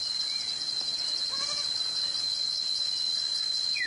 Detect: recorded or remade recorded